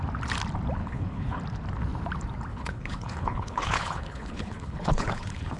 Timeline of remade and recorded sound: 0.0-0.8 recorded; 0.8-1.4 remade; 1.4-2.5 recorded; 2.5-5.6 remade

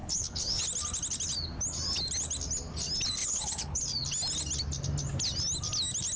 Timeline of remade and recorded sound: 0.0-0.6 remade; 0.6-3.2 recorded; 3.2-3.8 remade; 3.8-6.2 recorded

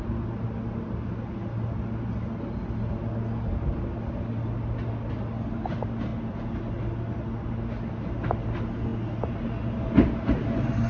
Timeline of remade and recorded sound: 0.0-10.9 recorded

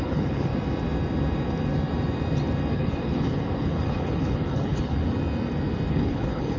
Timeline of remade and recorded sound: 0.0-0.5 remade; 0.5-2.7 recorded; 2.7-5.0 remade; 5.0-5.9 recorded; 5.9-6.6 remade

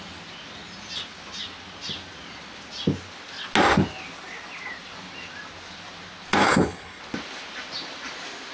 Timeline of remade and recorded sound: 0.0-6.4 recorded; 6.4-7.0 remade; 7.0-8.5 recorded

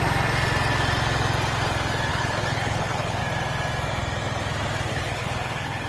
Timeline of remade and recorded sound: 0.0-2.1 recorded; 2.1-3.2 remade; 3.2-4.9 recorded; 4.9-5.9 remade